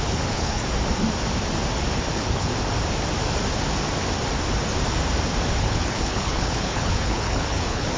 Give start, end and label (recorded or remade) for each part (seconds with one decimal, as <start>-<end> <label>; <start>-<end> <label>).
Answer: 0.0-0.6 remade; 0.6-2.1 recorded; 2.1-2.5 remade; 2.5-5.6 recorded; 5.6-8.0 remade